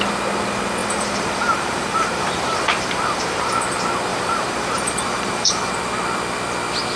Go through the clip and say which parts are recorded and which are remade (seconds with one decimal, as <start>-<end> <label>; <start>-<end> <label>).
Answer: 0.0-0.8 recorded; 0.8-3.5 remade; 3.5-4.1 recorded; 4.1-5.7 remade; 5.7-7.0 recorded